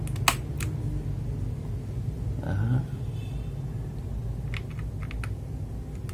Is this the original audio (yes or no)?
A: yes